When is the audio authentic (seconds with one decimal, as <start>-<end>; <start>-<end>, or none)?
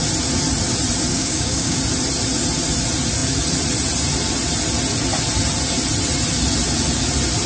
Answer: 0.0-1.1; 1.8-7.5